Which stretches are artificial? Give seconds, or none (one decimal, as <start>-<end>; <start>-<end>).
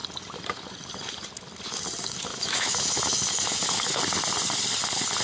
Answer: 2.3-4.0